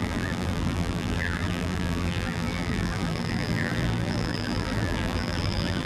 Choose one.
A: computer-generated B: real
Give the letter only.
A